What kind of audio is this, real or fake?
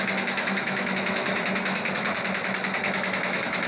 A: fake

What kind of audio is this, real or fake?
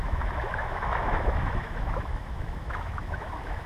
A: fake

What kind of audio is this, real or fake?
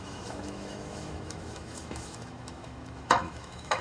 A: fake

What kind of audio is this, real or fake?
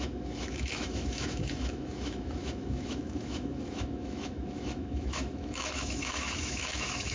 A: fake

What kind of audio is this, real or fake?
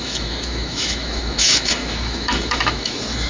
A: fake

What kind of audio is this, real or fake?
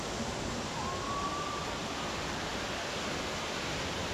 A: real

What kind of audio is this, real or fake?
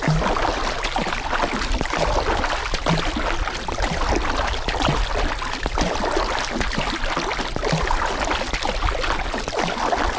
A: real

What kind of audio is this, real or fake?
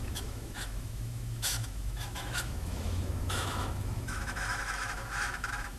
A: fake